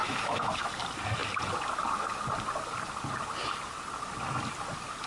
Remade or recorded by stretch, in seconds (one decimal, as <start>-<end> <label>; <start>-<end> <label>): 0.0-0.7 remade; 0.7-5.1 recorded